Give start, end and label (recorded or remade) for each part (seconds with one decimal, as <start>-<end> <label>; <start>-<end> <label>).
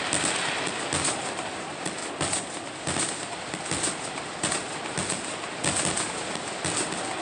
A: 0.0-7.2 recorded